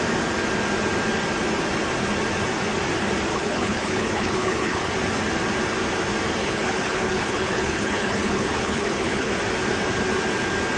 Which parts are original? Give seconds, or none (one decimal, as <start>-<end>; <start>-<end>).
0.0-3.3; 4.9-6.4; 9.3-10.8